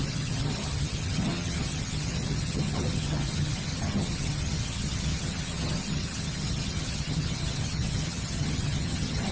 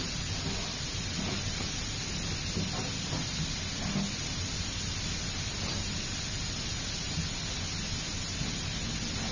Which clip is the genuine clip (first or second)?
second